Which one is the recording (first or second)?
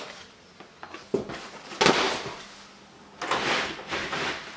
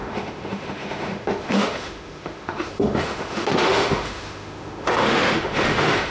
first